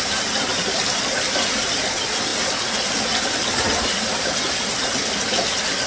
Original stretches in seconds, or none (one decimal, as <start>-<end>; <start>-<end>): 0.0-5.9